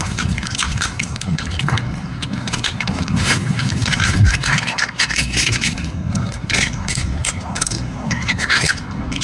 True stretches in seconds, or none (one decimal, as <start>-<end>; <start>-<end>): none